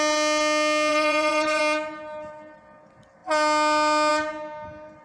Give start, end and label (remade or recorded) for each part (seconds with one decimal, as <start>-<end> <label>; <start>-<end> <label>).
0.0-0.9 recorded; 0.9-1.6 remade; 1.6-5.0 recorded